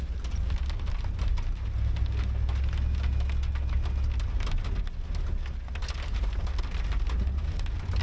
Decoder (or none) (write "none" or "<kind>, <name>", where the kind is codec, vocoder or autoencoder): none